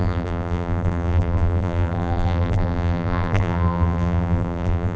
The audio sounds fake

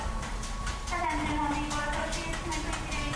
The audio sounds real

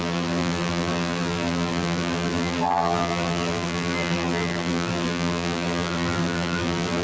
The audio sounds fake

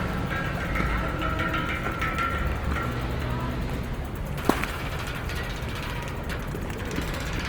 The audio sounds real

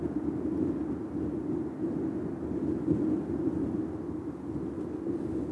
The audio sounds real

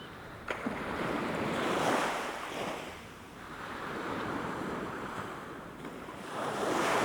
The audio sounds fake